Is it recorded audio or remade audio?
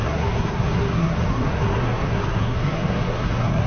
remade